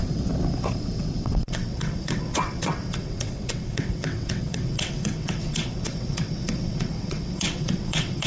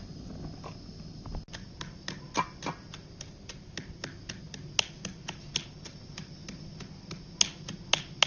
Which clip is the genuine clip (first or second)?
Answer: second